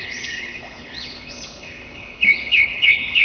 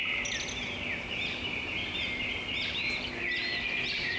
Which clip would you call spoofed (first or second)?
first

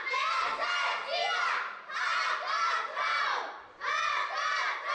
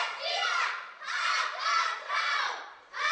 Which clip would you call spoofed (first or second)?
second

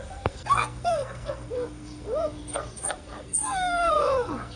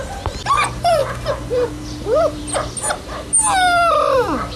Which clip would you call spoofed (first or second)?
first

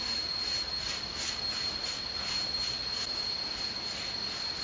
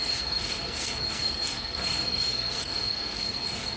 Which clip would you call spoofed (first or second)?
second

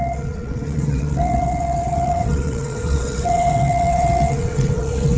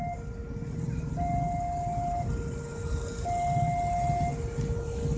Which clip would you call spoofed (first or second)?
first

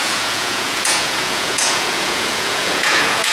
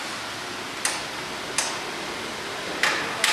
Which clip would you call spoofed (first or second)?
first